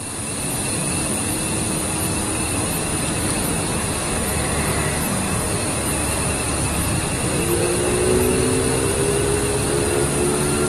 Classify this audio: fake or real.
real